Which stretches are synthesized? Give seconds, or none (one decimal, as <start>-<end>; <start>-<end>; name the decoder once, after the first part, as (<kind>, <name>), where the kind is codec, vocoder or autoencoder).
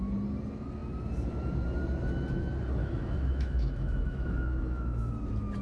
2.8-5.1 (autoencoder, DAC-VAE)